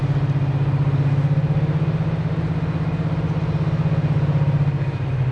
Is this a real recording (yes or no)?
yes